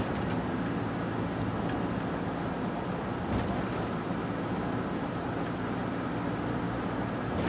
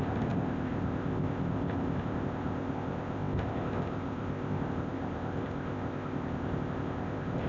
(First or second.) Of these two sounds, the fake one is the second